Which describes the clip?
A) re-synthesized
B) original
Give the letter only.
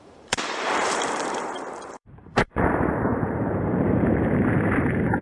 A